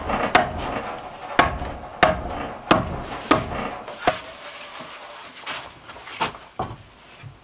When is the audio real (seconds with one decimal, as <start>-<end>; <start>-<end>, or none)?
0.0-7.4